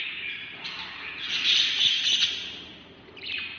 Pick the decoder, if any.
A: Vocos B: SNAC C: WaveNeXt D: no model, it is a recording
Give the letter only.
D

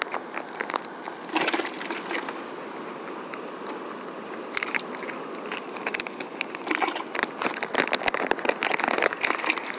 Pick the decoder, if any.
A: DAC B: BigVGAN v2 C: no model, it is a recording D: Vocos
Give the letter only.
C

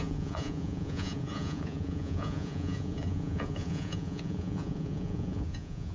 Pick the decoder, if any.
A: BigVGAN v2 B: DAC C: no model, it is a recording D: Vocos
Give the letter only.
D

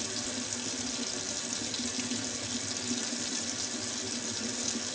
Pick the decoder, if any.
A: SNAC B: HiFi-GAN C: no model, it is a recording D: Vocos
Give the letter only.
C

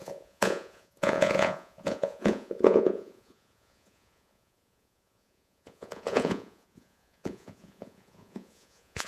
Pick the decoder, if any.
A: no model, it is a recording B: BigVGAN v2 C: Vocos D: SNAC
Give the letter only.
C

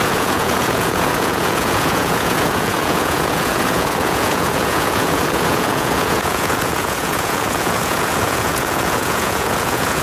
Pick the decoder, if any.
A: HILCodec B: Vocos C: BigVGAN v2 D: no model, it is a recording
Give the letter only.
B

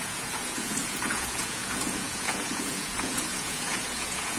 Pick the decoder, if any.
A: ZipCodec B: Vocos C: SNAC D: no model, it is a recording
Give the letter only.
B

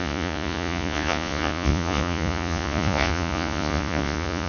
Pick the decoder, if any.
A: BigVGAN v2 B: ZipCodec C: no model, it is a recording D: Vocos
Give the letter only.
D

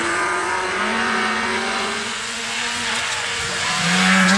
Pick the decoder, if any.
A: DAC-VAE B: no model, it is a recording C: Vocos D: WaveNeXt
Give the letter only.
C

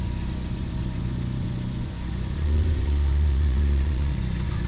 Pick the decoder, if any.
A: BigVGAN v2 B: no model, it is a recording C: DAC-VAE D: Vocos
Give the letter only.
D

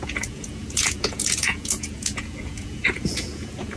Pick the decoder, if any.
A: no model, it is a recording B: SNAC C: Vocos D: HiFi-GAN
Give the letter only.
C